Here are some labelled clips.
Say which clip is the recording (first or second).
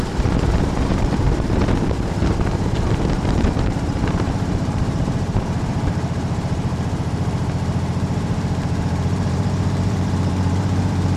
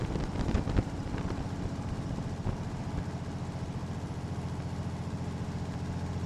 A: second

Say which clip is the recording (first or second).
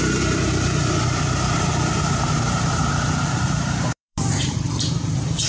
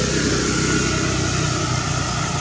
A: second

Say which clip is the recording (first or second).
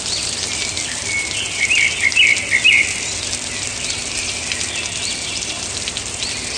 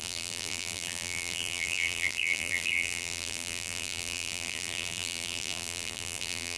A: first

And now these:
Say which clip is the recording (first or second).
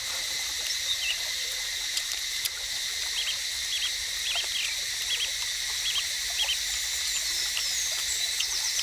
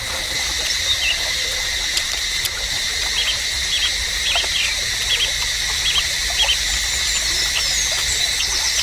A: second